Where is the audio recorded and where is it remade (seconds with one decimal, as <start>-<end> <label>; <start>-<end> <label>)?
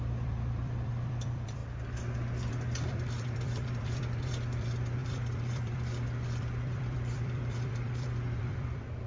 0.0-1.6 remade; 1.6-2.5 recorded; 2.5-9.1 remade